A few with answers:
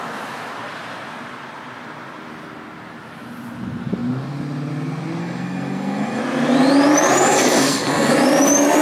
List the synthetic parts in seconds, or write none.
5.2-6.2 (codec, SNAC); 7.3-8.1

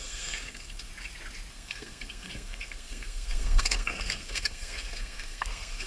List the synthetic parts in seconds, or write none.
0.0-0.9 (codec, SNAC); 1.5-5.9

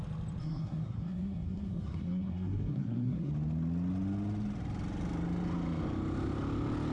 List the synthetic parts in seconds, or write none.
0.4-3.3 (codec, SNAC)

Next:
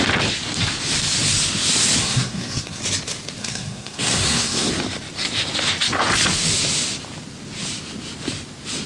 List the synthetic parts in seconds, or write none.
2.0-2.8 (codec, SNAC); 3.4-4.7

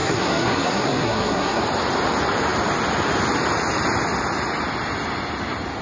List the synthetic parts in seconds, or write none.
0.0-1.6 (codec, SNAC)

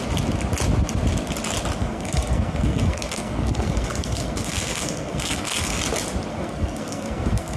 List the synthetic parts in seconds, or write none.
1.8-5.8 (codec, SNAC); 6.3-7.6

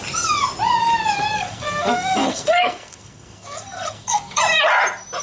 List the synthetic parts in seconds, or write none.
1.3-4.4 (codec, SNAC)

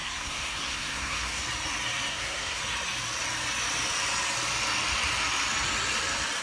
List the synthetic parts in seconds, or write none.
0.0-1.4 (codec, SNAC); 2.1-2.6